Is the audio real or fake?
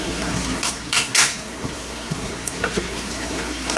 fake